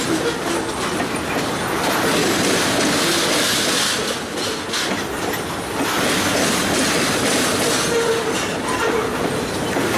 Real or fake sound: real